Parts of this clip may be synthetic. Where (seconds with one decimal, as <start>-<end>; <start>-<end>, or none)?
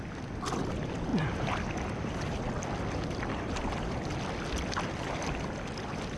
none